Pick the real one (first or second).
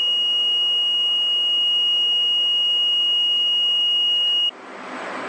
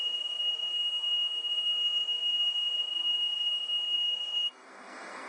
first